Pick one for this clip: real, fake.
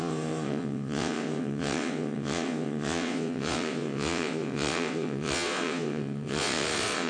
fake